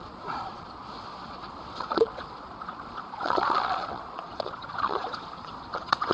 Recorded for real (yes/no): no